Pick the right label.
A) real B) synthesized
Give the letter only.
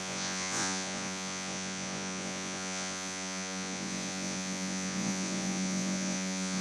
B